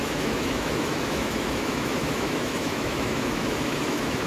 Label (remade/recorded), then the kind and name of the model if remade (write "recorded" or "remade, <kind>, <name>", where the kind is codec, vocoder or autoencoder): remade, autoencoder, DAC-VAE